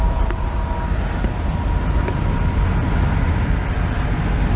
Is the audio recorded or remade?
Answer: recorded